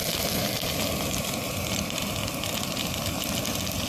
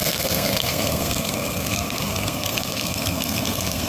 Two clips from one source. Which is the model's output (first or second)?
second